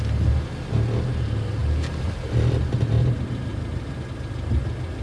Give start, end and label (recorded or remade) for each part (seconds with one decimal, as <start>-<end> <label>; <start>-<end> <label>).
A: 0.0-5.0 recorded